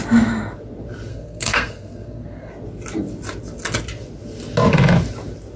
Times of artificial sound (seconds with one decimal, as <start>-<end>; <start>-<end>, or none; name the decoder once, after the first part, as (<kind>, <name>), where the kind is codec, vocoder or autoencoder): 1.1-2.5 (codec, SNAC)